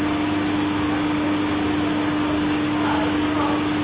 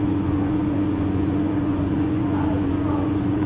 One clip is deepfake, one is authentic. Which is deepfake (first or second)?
second